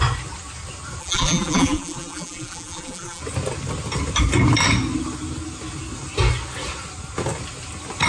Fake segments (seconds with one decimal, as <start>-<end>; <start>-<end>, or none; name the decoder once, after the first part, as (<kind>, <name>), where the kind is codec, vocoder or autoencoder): 1.0-3.2 (vocoder, BigVGAN v2)